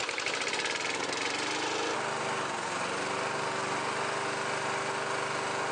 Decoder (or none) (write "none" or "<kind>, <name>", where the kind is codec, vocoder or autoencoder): none